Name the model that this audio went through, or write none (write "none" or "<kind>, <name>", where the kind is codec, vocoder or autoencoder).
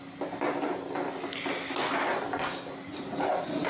none